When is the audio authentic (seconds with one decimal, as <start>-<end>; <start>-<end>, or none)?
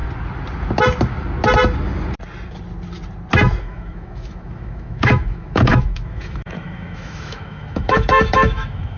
0.0-3.6